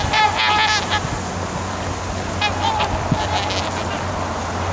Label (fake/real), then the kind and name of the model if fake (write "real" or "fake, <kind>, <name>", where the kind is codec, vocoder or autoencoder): real